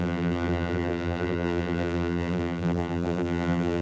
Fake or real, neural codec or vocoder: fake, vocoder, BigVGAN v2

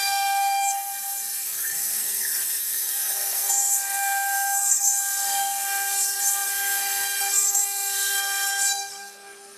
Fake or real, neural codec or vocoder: fake, codec, SNAC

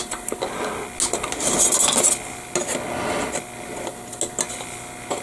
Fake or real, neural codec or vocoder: real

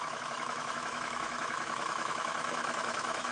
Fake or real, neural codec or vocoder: fake, autoencoder, DAC-VAE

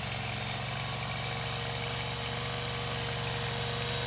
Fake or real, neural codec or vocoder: real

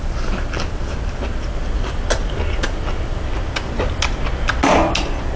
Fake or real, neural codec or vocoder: real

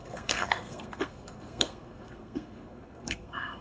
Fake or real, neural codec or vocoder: fake, codec, SNAC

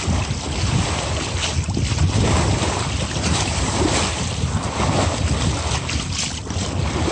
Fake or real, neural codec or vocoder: real